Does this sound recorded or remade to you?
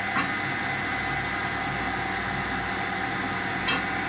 recorded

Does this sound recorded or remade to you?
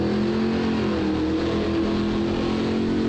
recorded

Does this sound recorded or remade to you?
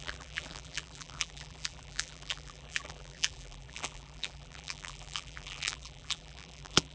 remade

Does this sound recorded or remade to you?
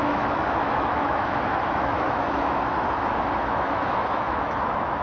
remade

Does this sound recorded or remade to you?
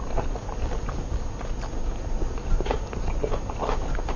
recorded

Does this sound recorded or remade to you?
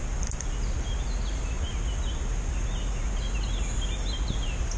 recorded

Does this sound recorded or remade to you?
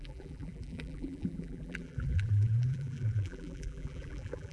remade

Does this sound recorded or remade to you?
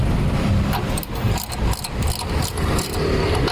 recorded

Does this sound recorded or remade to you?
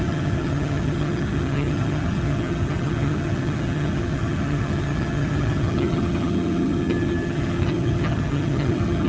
remade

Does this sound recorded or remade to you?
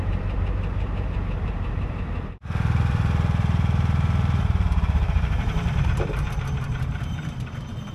remade